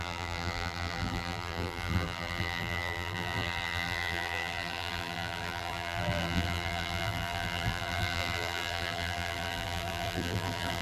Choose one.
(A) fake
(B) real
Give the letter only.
A